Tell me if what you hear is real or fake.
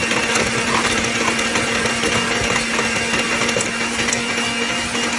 real